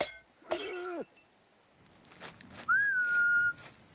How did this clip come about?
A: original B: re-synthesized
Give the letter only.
A